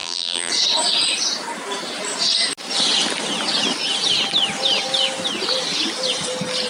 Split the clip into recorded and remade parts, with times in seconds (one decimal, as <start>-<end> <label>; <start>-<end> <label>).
0.0-0.5 remade; 0.5-6.7 recorded

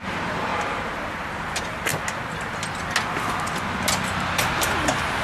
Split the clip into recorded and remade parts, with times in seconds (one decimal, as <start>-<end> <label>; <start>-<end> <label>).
0.0-0.5 remade; 0.5-1.1 recorded; 1.1-1.9 remade; 1.9-5.2 recorded